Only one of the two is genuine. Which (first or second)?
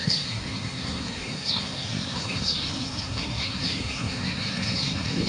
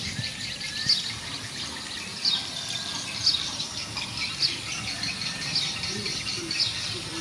second